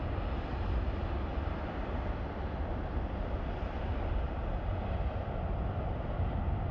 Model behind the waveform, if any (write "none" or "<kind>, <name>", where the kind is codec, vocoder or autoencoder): none